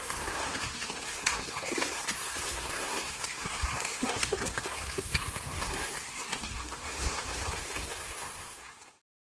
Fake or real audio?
fake